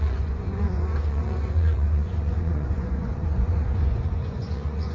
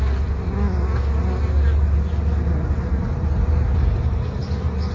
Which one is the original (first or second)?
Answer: second